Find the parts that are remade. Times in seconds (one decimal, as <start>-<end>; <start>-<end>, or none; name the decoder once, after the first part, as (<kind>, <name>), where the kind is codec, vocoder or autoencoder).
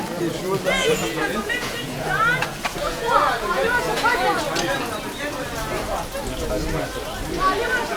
0.8-4.4 (vocoder, Vocos)